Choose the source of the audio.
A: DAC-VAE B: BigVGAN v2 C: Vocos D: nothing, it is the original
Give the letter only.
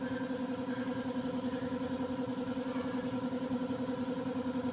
D